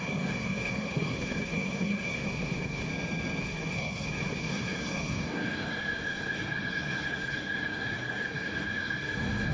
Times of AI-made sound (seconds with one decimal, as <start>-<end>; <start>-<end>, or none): 0.0-2.9; 3.4-9.5